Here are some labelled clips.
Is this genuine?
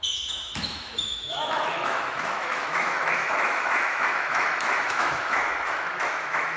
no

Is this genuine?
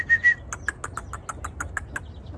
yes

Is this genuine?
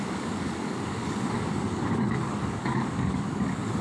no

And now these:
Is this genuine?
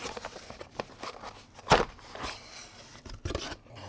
yes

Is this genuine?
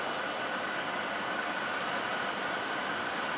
yes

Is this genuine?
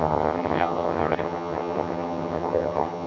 no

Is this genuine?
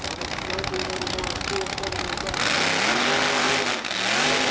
yes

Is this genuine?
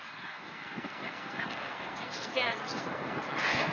no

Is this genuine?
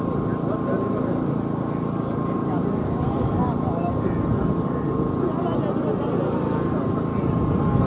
yes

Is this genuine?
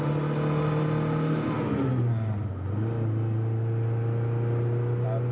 yes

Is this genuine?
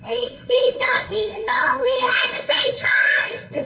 no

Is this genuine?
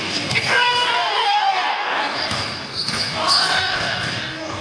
no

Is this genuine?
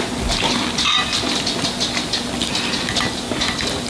yes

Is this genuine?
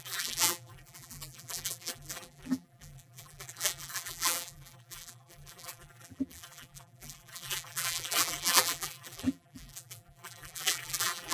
no